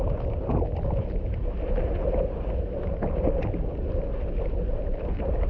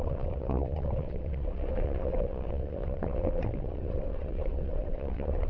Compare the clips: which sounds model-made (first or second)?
second